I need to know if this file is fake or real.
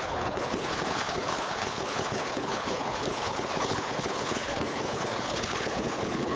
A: fake